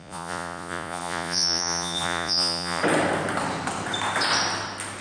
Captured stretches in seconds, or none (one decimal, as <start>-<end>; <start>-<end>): 2.8-5.0